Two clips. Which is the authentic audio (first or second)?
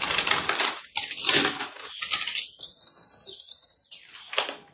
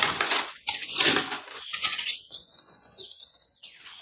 first